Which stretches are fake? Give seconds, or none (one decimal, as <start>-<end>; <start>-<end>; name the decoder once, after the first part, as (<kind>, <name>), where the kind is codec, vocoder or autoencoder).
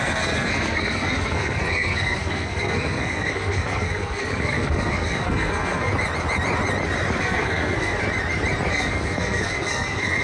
0.0-5.9 (codec, SNAC); 7.2-8.0; 8.7-10.2